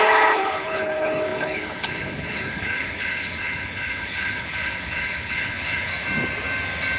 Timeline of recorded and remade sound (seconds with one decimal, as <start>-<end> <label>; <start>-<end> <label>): 0.0-5.9 remade; 5.9-7.0 recorded